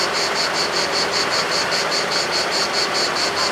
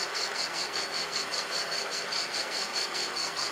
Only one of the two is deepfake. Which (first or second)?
second